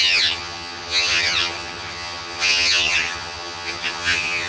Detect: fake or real fake